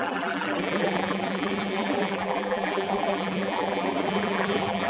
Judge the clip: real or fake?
fake